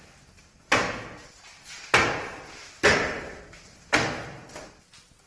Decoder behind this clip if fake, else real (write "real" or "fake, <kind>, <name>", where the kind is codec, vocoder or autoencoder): real